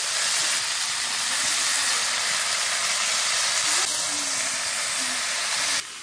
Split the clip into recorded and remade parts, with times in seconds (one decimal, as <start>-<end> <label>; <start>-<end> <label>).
0.0-6.0 recorded